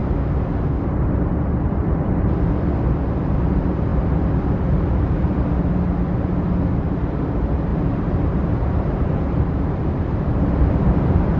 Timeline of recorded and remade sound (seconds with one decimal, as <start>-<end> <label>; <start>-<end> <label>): 0.0-3.1 recorded; 3.1-3.9 remade; 3.9-6.8 recorded; 6.8-11.4 remade